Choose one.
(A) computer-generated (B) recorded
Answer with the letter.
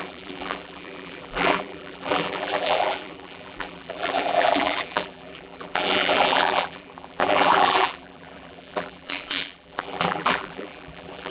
A